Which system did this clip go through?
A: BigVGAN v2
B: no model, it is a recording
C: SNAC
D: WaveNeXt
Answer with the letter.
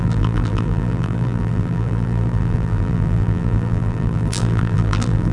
A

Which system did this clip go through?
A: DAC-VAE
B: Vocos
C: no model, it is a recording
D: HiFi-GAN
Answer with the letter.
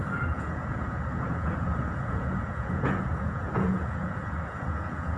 B